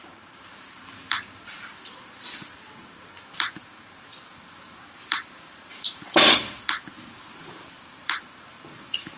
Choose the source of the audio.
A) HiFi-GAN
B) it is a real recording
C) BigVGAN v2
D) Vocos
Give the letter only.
C